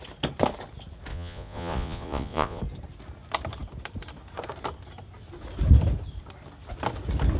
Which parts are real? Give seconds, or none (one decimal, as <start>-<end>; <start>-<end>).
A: 0.0-1.1; 2.6-7.4